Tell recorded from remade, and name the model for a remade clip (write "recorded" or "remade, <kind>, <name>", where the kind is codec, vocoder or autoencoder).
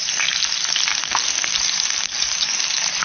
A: recorded